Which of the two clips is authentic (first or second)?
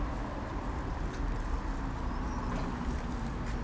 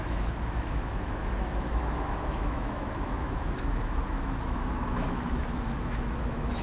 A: first